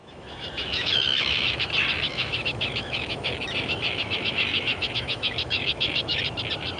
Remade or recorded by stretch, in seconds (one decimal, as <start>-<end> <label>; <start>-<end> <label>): 0.0-1.7 remade; 1.7-2.1 recorded; 2.1-6.2 remade; 6.2-6.8 recorded